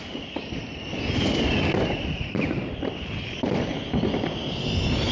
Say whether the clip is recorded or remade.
recorded